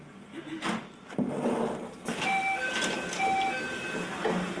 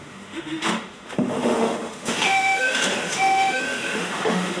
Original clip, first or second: first